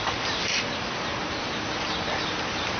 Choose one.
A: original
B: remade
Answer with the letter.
A